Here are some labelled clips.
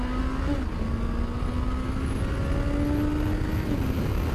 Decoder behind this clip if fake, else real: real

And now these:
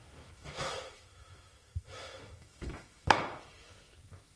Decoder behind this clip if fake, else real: fake, autoencoder, DAC-VAE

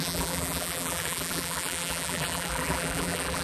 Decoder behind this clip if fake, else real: fake, vocoder, BigVGAN v2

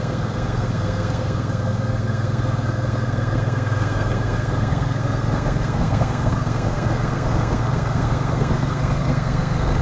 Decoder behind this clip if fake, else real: fake, codec, SNAC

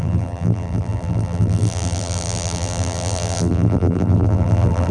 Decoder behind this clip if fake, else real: fake, vocoder, BigVGAN v2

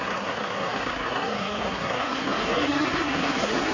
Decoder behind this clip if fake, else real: fake, codec, SNAC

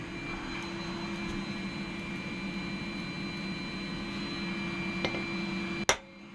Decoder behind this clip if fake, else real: real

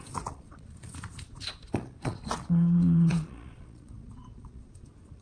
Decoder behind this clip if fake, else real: fake, vocoder, Vocos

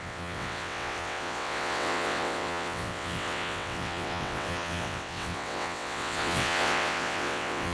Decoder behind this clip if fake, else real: fake, vocoder, WaveNeXt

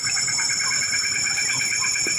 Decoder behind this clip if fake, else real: real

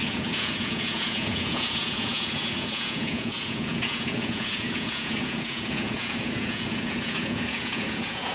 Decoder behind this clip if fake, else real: fake, vocoder, Vocos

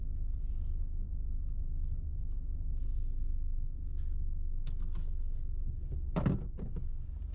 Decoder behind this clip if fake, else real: real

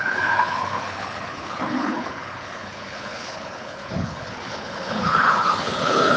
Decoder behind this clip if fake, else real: fake, codec, HILCodec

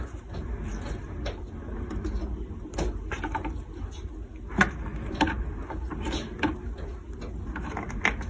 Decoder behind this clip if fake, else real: real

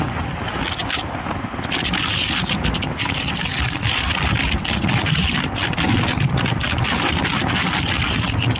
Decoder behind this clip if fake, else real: real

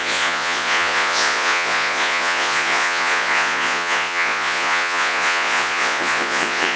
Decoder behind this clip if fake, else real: fake, vocoder, Vocos